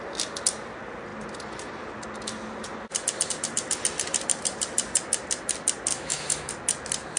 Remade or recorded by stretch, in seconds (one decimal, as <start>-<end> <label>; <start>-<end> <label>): 0.0-5.9 recorded; 5.9-6.5 remade; 6.5-7.2 recorded